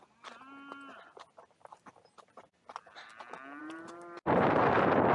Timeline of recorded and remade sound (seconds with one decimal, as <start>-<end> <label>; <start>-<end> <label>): 0.0-3.6 recorded; 3.6-4.6 remade; 4.6-5.1 recorded